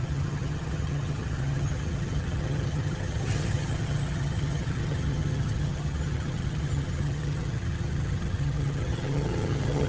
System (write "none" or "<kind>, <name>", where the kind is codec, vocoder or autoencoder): vocoder, HiFi-GAN